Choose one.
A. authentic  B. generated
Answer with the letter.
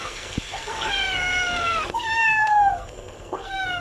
B